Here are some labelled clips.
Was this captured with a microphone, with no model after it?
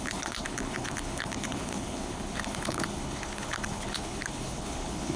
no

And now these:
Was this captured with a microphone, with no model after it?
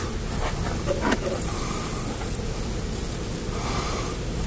yes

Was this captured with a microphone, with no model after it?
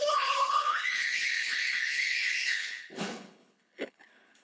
no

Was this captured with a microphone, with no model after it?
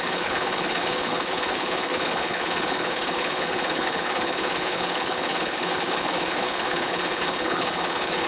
no